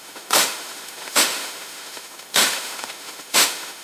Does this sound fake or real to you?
fake